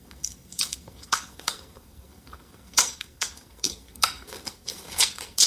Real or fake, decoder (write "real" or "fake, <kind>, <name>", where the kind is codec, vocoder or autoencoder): fake, codec, SNAC